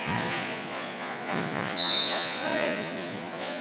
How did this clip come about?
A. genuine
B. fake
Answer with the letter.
B